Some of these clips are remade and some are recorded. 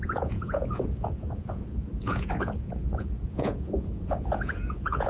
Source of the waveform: remade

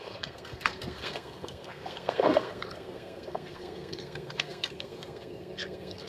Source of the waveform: remade